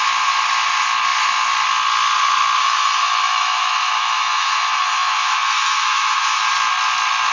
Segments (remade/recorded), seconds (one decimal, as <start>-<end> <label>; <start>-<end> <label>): 0.0-2.6 recorded; 2.6-6.4 remade; 6.4-7.3 recorded